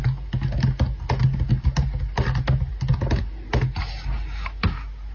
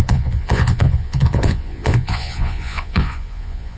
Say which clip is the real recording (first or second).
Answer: first